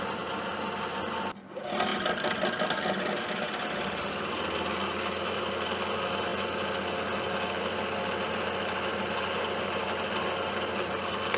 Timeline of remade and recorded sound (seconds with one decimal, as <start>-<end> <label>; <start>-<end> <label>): 0.0-11.4 recorded